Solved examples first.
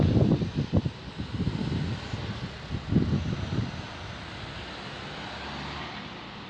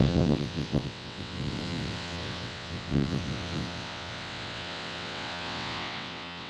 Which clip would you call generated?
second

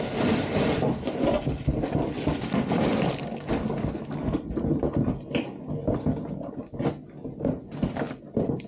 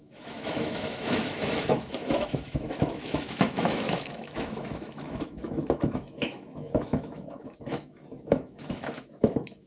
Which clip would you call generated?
second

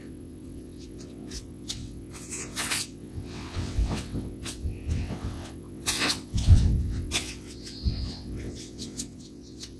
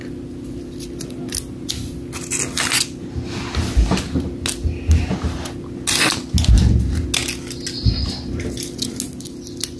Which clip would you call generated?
first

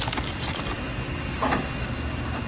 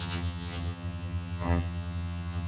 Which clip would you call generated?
second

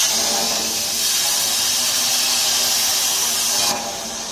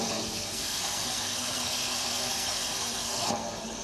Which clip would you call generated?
second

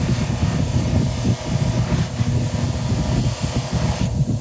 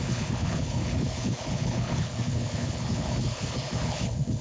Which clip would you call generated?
second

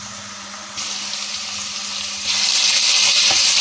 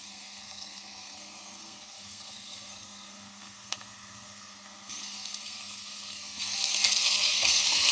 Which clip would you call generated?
second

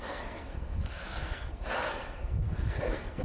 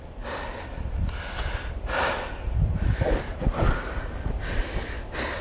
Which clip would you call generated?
first